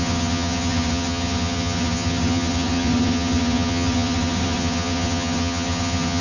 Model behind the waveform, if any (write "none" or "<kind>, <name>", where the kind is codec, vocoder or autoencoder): vocoder, HiFi-GAN